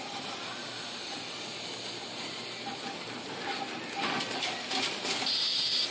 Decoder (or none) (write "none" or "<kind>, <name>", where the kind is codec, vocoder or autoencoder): none